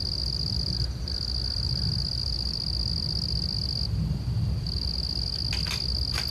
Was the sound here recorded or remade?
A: recorded